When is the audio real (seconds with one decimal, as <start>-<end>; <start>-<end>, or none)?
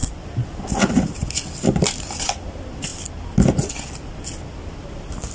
0.0-5.3